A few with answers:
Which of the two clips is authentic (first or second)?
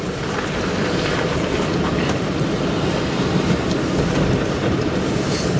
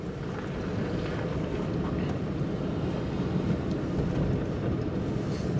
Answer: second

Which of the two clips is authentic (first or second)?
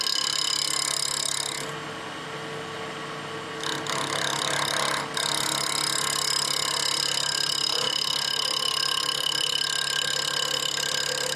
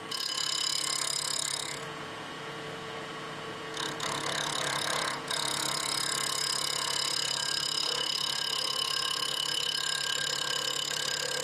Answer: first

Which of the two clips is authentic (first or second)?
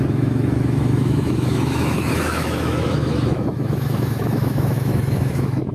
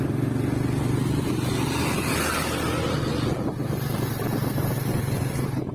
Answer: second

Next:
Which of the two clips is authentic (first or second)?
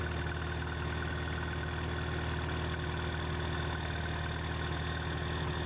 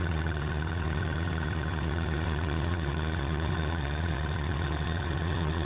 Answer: first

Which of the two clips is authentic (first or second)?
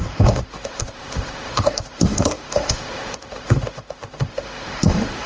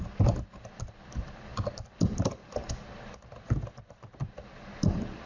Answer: second